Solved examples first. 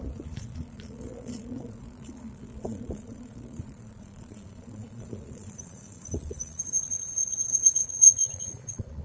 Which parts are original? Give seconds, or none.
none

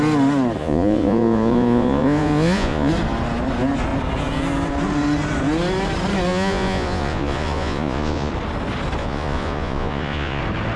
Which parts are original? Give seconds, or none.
0.0-0.6; 2.9-6.3; 8.3-9.0; 10.4-10.8

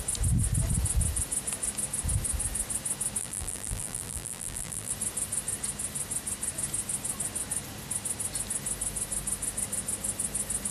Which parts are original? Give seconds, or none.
0.0-3.2; 4.9-10.7

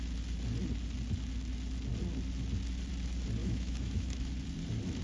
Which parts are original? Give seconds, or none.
0.0-3.4; 4.3-5.0

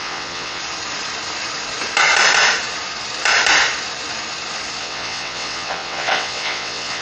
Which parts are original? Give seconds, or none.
0.6-4.8